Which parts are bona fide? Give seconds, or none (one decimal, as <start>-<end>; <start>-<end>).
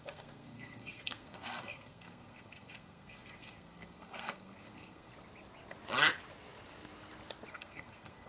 5.1-7.5